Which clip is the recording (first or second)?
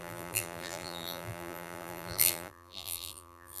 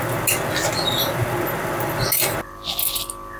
second